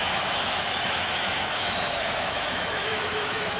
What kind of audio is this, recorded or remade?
remade